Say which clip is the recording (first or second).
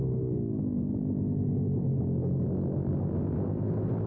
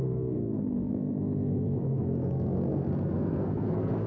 first